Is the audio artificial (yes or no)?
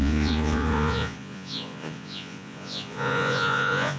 yes